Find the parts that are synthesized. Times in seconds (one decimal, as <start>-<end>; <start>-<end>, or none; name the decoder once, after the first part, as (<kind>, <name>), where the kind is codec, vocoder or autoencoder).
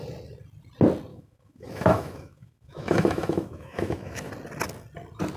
1.1-4.3 (autoencoder, DAC-VAE)